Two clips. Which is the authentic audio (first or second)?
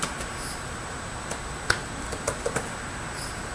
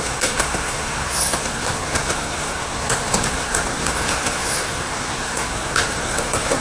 first